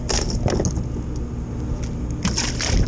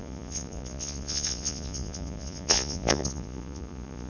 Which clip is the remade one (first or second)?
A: second